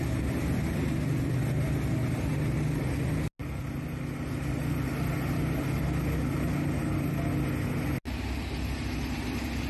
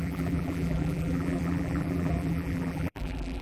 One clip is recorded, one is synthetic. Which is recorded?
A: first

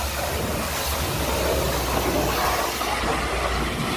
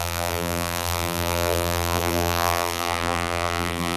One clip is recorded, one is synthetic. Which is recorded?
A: first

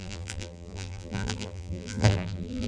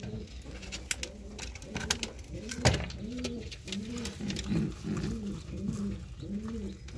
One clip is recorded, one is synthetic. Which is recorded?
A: second